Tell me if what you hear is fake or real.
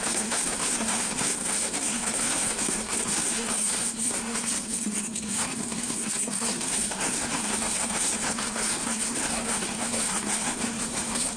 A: fake